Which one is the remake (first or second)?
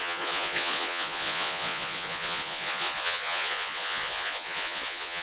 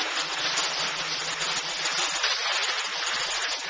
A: first